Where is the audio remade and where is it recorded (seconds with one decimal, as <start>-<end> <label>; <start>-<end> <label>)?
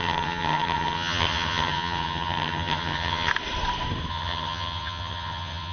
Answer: 0.0-3.3 remade; 3.3-4.1 recorded; 4.1-5.7 remade